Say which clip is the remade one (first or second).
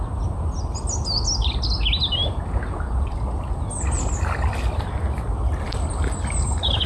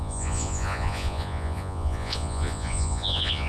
second